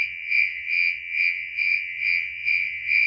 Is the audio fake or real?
fake